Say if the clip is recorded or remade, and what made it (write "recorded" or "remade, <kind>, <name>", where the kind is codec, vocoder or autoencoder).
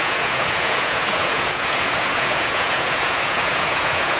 remade, vocoder, Vocos